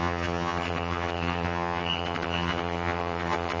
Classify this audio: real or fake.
fake